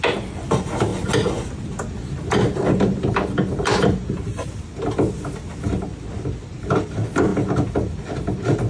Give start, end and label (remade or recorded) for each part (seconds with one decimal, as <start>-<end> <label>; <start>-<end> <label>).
0.0-8.7 recorded